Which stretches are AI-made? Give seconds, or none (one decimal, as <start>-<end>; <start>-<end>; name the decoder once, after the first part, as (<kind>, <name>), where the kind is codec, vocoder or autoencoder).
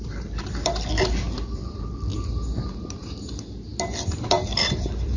0.0-2.1 (vocoder, BigVGAN v2); 3.3-3.7; 4.2-5.2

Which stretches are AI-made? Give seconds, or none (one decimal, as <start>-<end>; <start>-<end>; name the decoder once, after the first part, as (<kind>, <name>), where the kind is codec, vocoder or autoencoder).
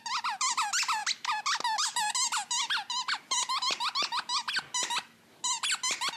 none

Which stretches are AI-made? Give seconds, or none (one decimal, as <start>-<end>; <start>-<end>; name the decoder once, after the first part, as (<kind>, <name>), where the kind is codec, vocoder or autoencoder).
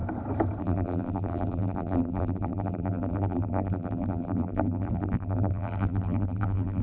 0.6-6.8 (vocoder, BigVGAN v2)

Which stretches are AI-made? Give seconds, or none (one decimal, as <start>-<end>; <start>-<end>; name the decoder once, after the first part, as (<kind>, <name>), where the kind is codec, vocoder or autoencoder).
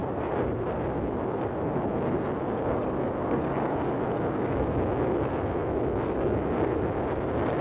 0.0-0.6 (vocoder, BigVGAN v2)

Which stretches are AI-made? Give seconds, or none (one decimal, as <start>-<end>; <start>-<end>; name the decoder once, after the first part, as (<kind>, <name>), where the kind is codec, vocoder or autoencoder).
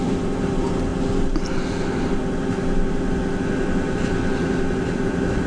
0.0-5.5 (vocoder, BigVGAN v2)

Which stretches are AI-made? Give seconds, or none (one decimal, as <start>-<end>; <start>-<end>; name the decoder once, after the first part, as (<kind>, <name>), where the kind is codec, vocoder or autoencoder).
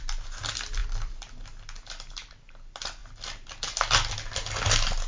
none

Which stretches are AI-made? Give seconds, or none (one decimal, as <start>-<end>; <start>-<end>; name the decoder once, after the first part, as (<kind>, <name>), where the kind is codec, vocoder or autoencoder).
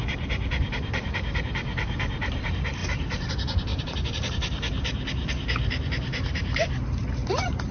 0.0-7.7 (vocoder, BigVGAN v2)